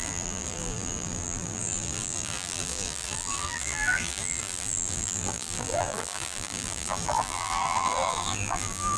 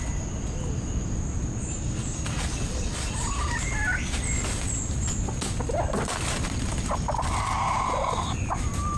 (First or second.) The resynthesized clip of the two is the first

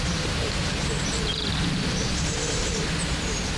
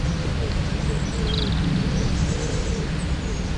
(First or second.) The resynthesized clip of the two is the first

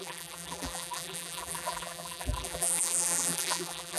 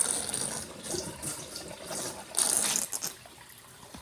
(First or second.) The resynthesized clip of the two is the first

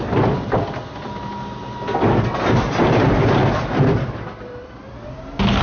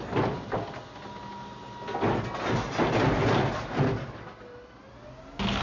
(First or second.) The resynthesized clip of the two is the first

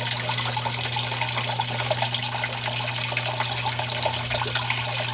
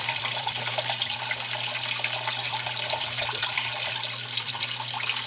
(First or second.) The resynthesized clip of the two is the second